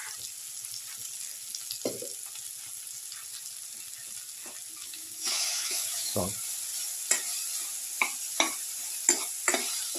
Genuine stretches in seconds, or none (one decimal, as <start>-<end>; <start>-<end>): 0.0-4.8; 6.2-10.0